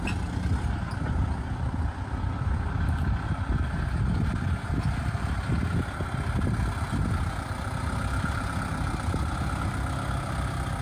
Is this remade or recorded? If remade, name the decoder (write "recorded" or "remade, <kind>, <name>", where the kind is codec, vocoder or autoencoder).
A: recorded